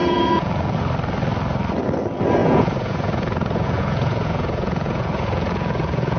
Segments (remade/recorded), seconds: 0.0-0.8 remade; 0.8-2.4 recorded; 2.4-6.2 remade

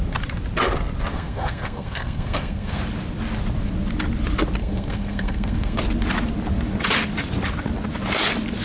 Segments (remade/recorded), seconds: 0.0-1.1 recorded; 1.1-2.8 remade; 2.8-4.6 recorded; 4.6-5.8 remade; 5.8-8.6 recorded